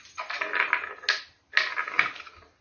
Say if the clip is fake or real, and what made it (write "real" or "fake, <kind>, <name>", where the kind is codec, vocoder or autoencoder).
real